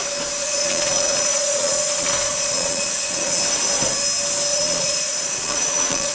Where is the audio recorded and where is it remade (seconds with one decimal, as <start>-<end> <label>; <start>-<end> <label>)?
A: 0.0-0.4 recorded; 0.4-3.4 remade; 3.4-4.5 recorded; 4.5-6.1 remade